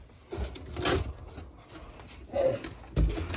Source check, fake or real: real